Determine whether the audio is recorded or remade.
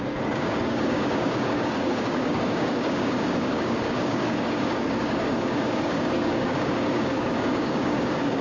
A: remade